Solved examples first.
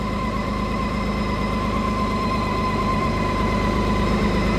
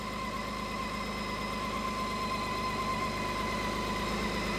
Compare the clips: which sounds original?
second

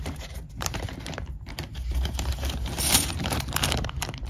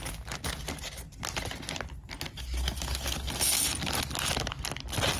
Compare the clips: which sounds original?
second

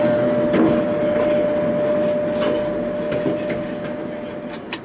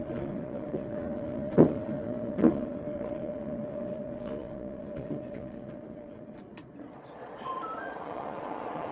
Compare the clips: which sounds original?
first